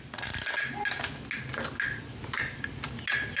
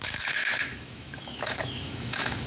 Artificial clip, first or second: second